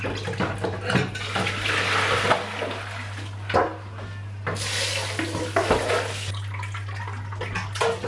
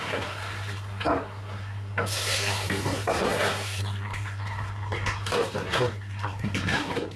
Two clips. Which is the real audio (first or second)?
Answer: first